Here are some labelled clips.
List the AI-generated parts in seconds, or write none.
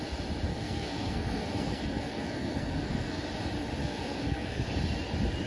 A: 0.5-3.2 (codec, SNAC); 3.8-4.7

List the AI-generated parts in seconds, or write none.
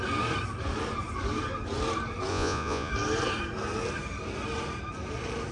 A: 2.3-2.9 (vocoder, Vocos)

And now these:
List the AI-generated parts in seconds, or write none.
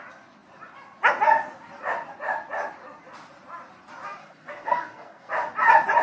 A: 4.2-5.3 (codec, SNAC)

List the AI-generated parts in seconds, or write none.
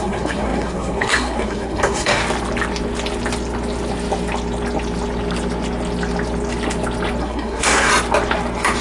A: 0.0-2.2 (codec, SNAC); 7.2-7.9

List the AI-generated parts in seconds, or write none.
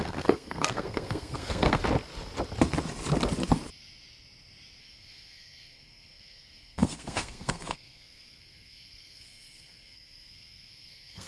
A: 0.0-1.8 (codec, SNAC); 4.8-11.3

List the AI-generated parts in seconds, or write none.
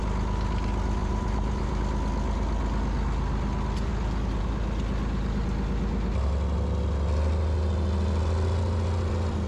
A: 1.0-1.8 (vocoder, BigVGAN v2)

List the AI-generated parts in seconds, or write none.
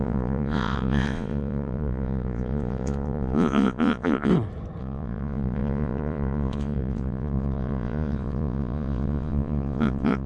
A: 0.0-4.3 (vocoder, Vocos); 4.8-10.3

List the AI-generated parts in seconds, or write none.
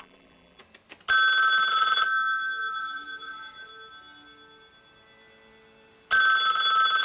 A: 0.0-0.6 (vocoder, BigVGAN v2); 1.7-3.7